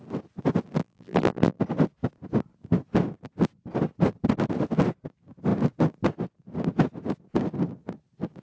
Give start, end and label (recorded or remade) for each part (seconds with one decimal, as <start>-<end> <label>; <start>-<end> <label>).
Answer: 0.0-0.8 recorded; 0.8-1.6 remade; 1.6-8.4 recorded